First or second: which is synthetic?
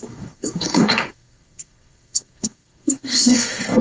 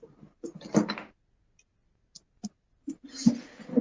first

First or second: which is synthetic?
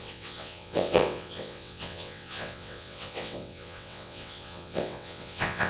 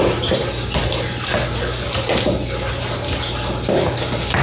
first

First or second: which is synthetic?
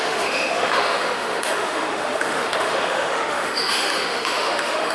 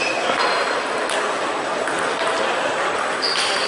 first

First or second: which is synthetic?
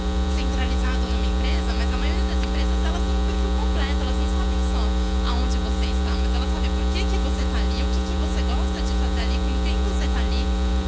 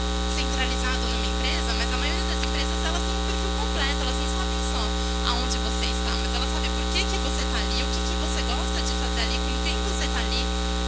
first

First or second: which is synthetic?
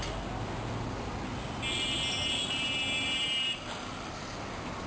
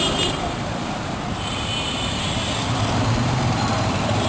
second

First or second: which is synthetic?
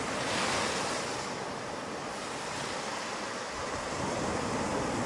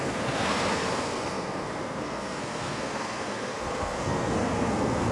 second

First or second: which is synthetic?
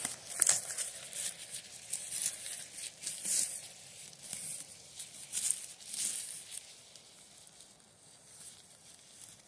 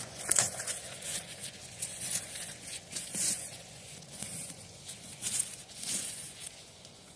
second